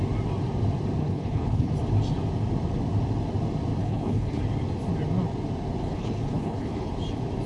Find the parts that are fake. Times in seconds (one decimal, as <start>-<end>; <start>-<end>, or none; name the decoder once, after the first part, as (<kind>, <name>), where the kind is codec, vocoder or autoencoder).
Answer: 1.0-1.7 (codec, HILCodec); 3.8-4.4; 5.8-6.9